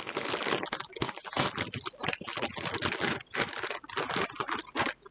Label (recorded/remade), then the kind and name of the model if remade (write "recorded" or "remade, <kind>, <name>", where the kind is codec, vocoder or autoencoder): recorded